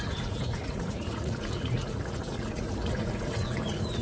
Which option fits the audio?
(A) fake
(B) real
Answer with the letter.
A